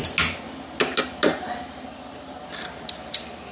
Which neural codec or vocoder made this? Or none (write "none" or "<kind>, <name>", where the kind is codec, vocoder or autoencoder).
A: none